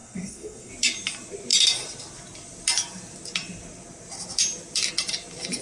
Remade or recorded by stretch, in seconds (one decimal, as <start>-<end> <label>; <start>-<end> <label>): 0.0-0.7 remade; 0.7-5.6 recorded